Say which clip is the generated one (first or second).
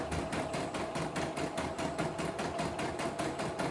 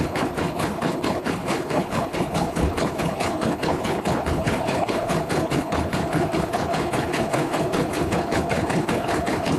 second